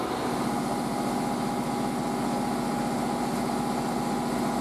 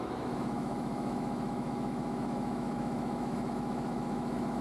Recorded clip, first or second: first